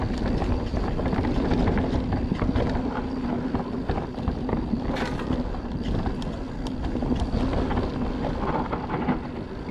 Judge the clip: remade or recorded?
recorded